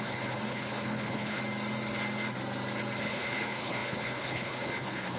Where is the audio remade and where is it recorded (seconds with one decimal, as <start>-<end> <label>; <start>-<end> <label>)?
0.0-1.4 remade; 1.4-3.0 recorded; 3.0-5.2 remade